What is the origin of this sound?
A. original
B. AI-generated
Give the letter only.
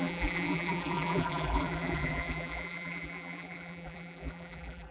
B